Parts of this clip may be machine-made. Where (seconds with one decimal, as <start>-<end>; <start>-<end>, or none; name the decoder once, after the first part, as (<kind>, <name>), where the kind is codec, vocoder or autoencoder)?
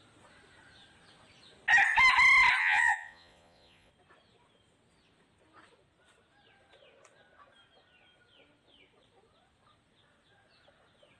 2.6-3.9 (vocoder, Vocos)